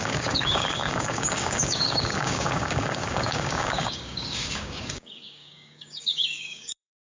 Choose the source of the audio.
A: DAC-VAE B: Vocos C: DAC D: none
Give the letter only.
C